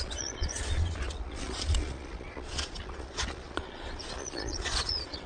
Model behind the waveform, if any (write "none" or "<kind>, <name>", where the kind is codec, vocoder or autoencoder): vocoder, Vocos